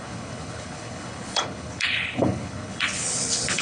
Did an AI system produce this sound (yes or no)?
yes